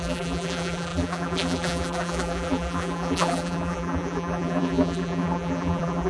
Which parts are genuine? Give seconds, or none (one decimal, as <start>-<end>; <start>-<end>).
none